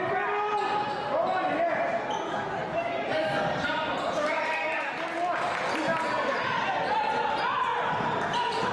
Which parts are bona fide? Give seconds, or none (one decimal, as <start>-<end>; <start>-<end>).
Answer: 0.0-2.6; 4.5-5.9; 7.2-7.7